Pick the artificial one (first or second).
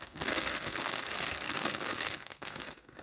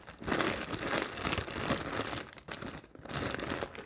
first